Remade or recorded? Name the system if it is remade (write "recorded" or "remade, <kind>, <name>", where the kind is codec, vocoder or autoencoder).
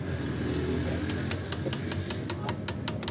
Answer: recorded